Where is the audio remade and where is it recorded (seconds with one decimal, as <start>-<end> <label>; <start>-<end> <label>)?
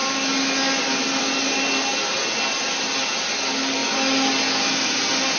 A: 0.0-5.4 recorded